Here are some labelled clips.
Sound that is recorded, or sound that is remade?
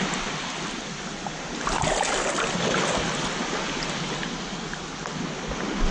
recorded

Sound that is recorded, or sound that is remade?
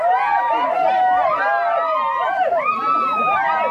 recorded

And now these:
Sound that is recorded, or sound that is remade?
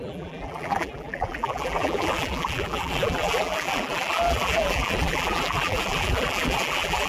remade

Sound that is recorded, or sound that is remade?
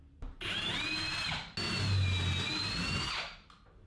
recorded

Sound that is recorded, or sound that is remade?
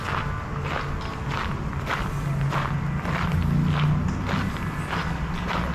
recorded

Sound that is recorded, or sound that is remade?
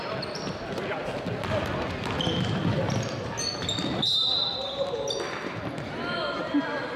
recorded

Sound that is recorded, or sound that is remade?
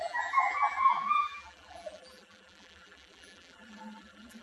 remade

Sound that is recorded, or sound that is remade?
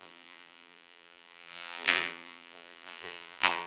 remade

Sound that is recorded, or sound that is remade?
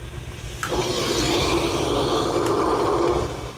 recorded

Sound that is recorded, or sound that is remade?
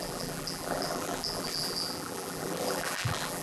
remade